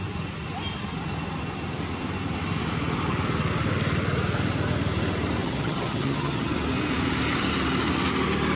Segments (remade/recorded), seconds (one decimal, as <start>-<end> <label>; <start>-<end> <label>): 0.0-5.4 recorded; 5.4-6.5 remade; 6.5-8.6 recorded